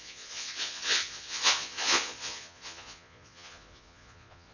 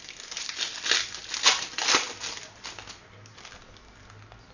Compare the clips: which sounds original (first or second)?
second